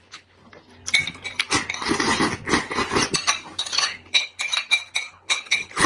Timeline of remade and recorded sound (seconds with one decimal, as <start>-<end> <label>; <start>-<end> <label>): 0.0-0.4 remade; 0.4-3.6 recorded; 3.6-4.5 remade; 4.5-5.1 recorded; 5.1-5.9 remade